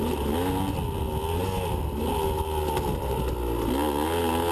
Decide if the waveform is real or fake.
real